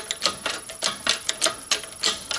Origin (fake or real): real